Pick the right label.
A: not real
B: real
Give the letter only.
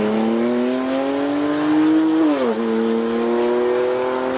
B